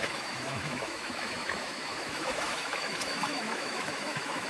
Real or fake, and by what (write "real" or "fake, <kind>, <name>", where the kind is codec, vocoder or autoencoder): fake, autoencoder, DAC-VAE